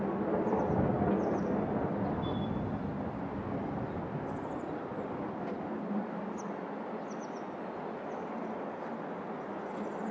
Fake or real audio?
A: real